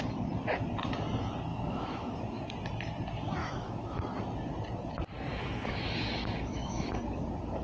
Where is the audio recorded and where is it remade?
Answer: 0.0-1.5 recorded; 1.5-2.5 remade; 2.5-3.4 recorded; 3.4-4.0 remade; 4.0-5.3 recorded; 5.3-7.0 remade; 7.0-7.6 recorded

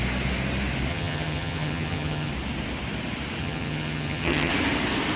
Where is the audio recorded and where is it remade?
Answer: 0.0-0.9 recorded; 0.9-2.3 remade; 2.3-3.4 recorded; 3.4-4.5 remade; 4.5-5.2 recorded